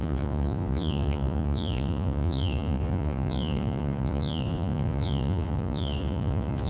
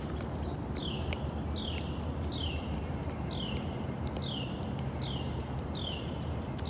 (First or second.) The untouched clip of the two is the second